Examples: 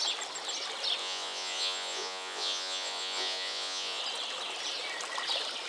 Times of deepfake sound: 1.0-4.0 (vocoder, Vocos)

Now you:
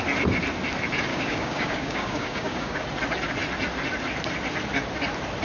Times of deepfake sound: 1.1-2.8 (codec, DAC)

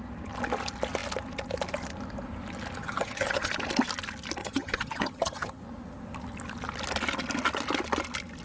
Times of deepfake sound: 2.8-3.5 (vocoder, HiFi-GAN); 4.4-5.6

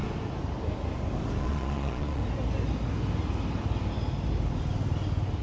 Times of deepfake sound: 1.4-2.2 (vocoder, Vocos)

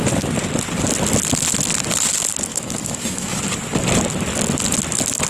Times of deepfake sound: 2.5-3.4 (autoencoder, DAC-VAE)

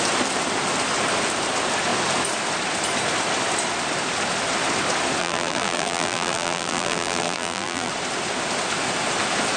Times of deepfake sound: 5.2-7.9 (vocoder, BigVGAN v2)

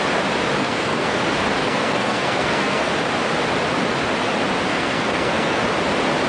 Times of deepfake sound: 0.6-1.2 (codec, SNAC); 1.6-2.9; 4.7-5.6